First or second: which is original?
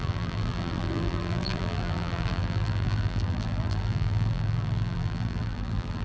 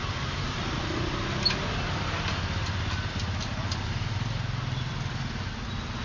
second